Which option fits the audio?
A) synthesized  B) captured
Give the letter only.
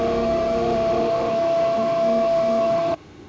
A